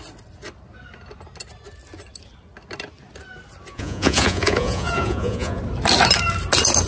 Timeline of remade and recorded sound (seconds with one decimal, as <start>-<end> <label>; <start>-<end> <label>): 0.0-3.7 recorded; 3.7-5.6 remade; 5.6-6.9 recorded

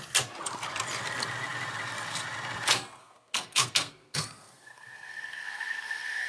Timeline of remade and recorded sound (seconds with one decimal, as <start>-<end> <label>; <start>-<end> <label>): 0.0-3.0 recorded; 3.0-6.3 remade

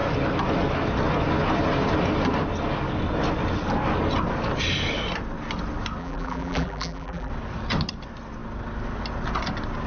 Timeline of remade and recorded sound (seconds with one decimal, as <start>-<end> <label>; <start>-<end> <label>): 0.0-6.0 recorded; 6.0-7.3 remade; 7.3-9.9 recorded

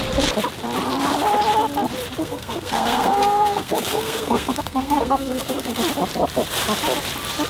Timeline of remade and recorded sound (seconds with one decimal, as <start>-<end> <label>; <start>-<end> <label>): 0.0-2.2 recorded; 2.2-5.8 remade; 5.8-7.5 recorded

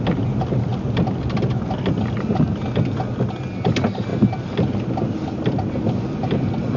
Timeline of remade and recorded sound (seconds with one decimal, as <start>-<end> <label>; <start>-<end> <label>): 0.0-6.8 recorded

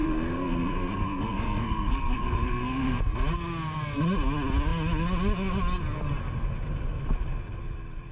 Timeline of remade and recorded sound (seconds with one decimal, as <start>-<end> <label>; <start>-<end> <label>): 0.0-3.0 remade; 3.0-8.1 recorded

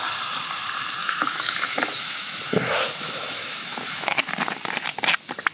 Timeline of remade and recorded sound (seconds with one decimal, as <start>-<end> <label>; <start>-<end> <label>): 0.0-1.0 recorded; 1.0-4.3 remade; 4.3-5.5 recorded